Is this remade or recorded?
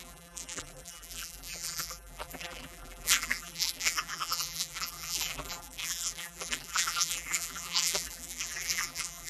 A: remade